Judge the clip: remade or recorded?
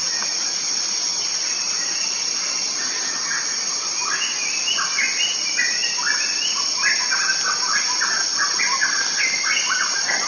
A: recorded